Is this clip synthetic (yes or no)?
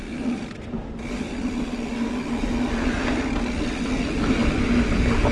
no